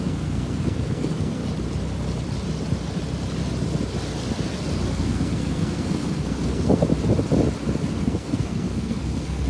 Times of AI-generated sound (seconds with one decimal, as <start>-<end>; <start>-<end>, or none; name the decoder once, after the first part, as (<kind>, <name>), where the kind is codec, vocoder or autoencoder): 0.0-1.4 (codec, SNAC); 4.9-6.9; 8.0-9.5